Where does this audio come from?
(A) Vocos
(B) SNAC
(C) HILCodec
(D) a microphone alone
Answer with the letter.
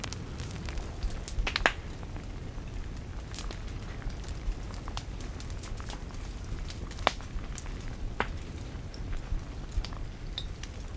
D